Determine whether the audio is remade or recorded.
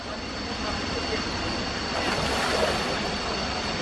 recorded